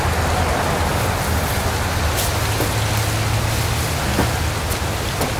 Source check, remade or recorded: recorded